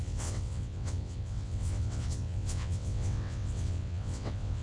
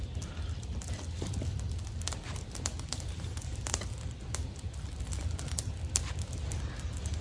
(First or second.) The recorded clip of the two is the second